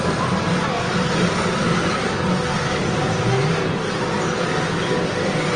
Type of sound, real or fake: real